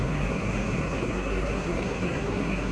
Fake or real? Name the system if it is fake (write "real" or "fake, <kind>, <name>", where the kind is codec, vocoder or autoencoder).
fake, codec, SNAC